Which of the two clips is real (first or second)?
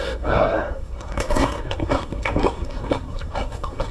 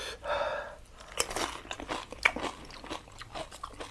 second